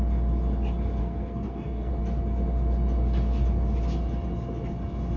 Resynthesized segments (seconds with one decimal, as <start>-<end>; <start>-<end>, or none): 1.0-1.9